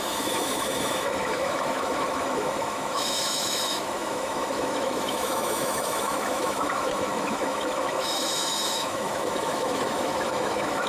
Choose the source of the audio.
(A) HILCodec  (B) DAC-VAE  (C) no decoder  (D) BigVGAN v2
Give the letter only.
B